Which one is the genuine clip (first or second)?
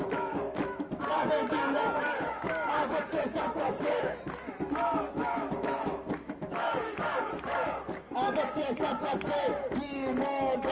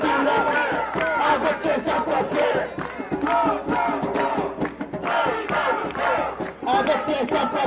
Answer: second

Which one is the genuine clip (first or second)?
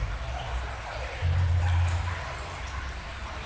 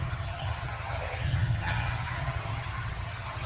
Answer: first